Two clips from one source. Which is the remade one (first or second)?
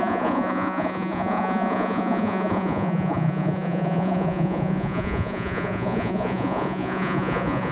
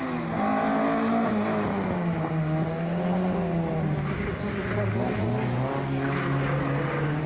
first